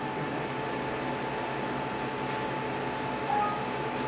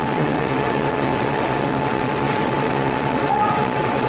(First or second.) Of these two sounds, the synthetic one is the second